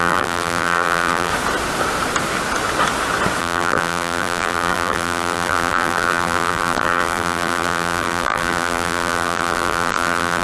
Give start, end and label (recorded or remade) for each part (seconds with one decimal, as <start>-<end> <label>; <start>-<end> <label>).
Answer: 0.0-1.3 remade; 1.3-3.4 recorded; 3.4-10.4 remade